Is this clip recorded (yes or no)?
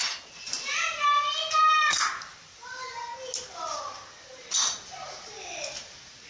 yes